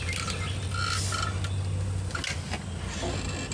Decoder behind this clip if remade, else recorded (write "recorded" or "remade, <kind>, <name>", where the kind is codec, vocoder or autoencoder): recorded